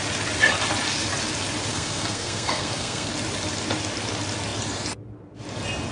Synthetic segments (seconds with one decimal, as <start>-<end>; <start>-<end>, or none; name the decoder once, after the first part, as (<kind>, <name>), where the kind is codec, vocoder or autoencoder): 1.7-3.1 (codec, SNAC)